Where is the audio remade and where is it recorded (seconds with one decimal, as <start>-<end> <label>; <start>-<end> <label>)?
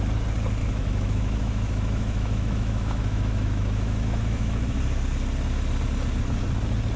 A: 0.0-0.6 recorded; 0.6-4.8 remade; 4.8-7.0 recorded